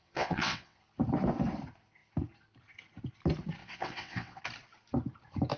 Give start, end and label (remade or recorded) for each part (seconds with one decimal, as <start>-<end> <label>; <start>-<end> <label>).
0.0-0.8 remade; 0.8-3.6 recorded; 3.6-4.4 remade; 4.4-5.6 recorded